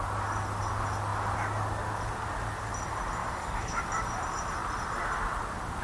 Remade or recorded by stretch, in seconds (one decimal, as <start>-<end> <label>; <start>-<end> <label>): 0.0-3.2 recorded; 3.2-3.8 remade; 3.8-5.8 recorded